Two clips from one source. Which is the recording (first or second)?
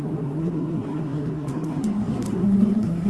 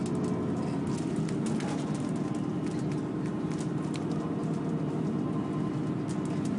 second